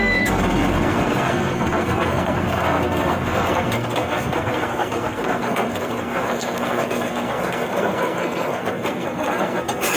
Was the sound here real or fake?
fake